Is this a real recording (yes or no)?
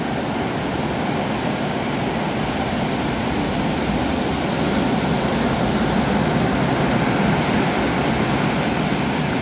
yes